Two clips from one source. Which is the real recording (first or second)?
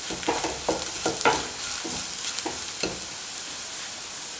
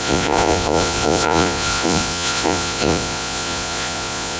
first